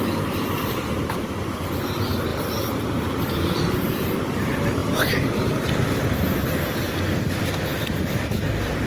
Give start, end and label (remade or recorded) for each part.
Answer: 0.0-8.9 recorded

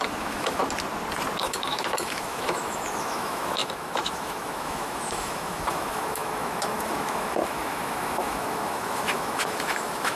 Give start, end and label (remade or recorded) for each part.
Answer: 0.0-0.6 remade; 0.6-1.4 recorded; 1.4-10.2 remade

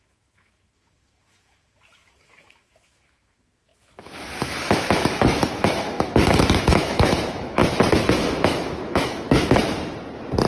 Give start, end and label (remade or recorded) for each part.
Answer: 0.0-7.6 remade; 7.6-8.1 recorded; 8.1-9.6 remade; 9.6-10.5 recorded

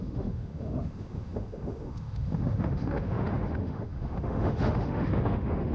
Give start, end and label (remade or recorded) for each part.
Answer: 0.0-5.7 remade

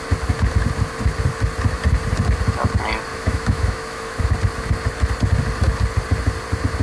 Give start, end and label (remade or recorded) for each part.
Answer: 0.0-3.1 recorded; 3.1-4.2 remade; 4.2-6.8 recorded

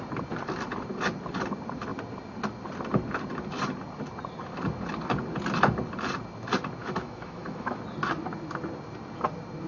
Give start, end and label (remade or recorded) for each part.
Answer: 0.0-6.8 recorded; 6.8-7.8 remade; 7.8-9.7 recorded

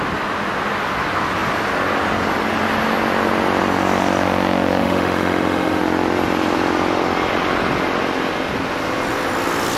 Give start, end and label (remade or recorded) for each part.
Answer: 0.0-4.8 recorded; 4.8-5.8 remade; 5.8-9.8 recorded

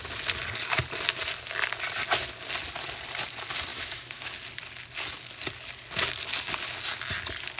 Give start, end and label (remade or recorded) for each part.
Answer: 0.0-3.7 recorded; 3.7-4.3 remade; 4.3-7.6 recorded